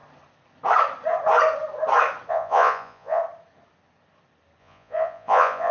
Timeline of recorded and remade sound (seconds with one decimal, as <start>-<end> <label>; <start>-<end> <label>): 0.0-2.3 recorded; 2.3-3.2 remade; 3.2-4.6 recorded; 4.6-5.7 remade